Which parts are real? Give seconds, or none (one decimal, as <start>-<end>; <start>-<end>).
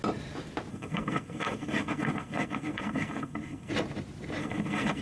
0.0-0.7; 3.7-4.4